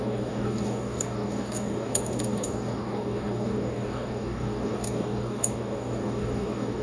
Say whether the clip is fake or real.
fake